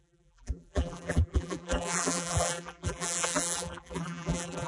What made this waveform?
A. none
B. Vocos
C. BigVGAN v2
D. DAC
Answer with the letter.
C